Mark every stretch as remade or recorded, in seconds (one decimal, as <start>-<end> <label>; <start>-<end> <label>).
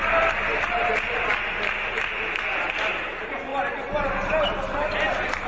0.0-5.5 recorded